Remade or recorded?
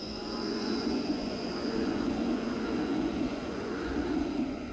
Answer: remade